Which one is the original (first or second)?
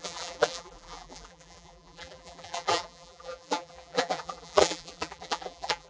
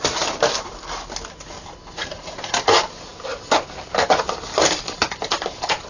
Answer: second